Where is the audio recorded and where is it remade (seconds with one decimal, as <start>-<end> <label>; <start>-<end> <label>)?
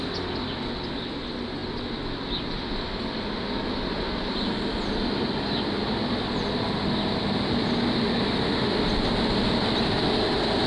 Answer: 0.0-10.7 recorded